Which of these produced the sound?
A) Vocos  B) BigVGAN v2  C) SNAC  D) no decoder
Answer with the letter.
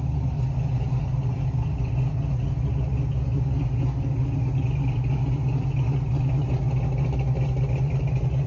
D